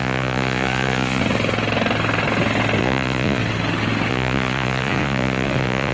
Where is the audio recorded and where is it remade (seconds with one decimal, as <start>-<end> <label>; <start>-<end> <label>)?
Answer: 0.0-1.2 remade; 1.2-2.8 recorded; 2.8-3.4 remade; 3.4-4.1 recorded; 4.1-5.9 remade